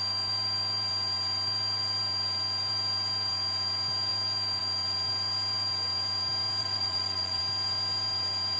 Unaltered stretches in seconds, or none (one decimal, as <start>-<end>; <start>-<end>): 0.0-6.6; 7.4-8.6